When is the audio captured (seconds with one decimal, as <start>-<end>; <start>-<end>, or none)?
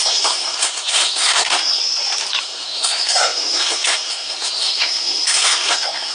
1.8-2.4